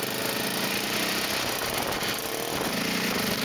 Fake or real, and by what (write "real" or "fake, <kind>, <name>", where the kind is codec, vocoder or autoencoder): real